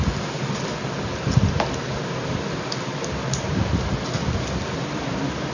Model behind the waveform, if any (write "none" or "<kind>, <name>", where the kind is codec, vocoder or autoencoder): none